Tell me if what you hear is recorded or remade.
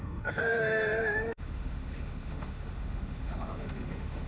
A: remade